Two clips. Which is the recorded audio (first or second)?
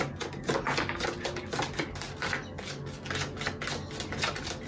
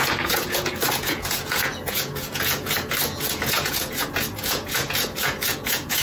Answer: first